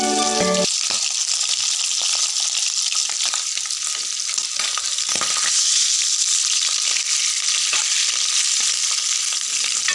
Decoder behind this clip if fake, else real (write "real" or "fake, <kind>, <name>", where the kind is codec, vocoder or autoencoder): real